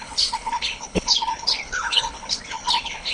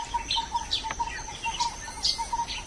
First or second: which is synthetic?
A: first